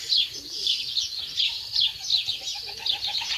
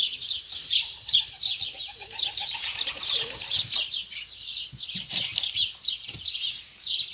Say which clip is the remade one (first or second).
second